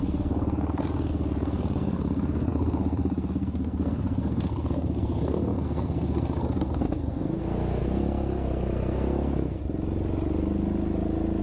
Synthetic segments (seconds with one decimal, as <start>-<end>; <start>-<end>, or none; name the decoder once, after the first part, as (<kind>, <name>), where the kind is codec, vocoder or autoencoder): 0.0-9.6 (codec, SNAC)